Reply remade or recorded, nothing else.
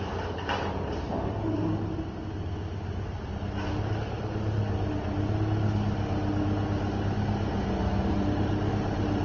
recorded